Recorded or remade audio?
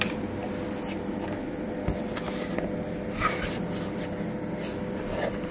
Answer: recorded